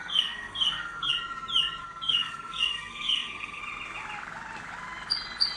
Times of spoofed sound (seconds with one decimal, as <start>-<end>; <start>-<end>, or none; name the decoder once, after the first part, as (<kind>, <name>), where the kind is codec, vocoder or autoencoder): 0.0-1.1 (codec, SNAC); 1.8-3.6